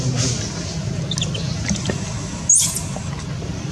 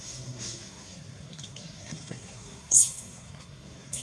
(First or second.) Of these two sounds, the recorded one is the first